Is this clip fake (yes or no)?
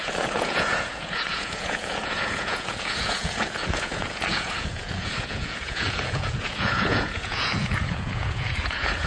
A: yes